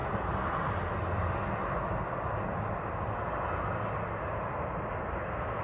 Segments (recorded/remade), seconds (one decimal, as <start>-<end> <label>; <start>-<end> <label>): 0.0-5.6 recorded